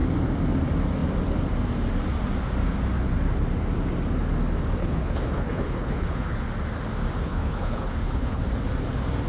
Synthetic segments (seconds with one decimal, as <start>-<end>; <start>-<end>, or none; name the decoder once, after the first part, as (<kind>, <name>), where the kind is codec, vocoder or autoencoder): 4.8-6.4 (codec, HILCodec); 7.2-8.4